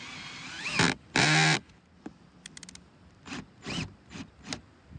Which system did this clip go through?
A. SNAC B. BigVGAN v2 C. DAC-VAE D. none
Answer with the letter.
D